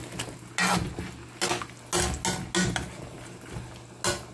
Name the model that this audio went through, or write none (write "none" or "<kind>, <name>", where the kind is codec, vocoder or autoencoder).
none